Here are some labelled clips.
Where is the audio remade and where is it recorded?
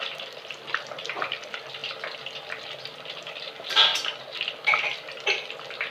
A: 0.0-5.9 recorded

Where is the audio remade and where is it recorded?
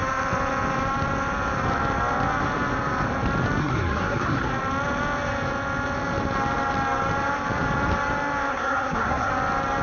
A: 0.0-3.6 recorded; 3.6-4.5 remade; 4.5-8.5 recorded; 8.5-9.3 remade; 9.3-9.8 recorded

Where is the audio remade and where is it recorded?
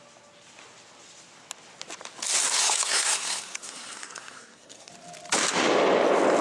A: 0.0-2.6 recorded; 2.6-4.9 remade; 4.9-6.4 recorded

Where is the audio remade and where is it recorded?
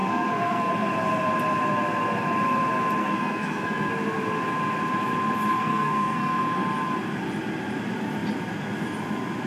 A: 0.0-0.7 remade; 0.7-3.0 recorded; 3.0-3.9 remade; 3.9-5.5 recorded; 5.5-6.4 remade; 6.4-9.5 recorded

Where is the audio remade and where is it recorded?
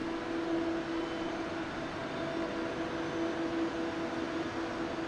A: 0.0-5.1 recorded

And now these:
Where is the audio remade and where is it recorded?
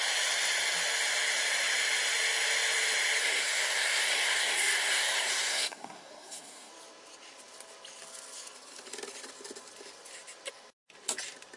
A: 0.0-3.2 recorded; 3.2-6.7 remade; 6.7-11.6 recorded